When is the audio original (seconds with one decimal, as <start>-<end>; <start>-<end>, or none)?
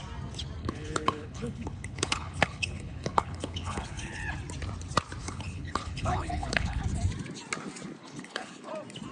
0.0-0.6; 4.3-5.2; 6.8-8.0; 8.7-9.1